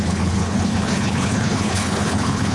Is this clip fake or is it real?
fake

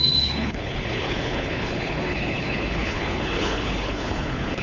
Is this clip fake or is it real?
fake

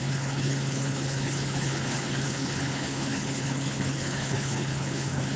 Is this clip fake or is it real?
fake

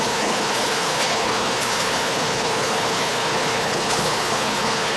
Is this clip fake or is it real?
fake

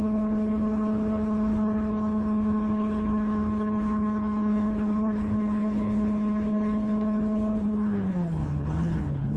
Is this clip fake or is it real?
fake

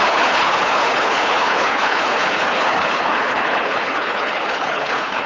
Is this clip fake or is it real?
fake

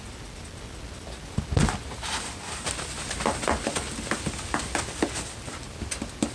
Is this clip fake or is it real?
real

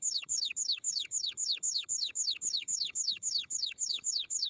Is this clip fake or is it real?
fake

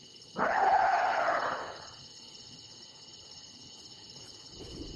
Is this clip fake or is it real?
fake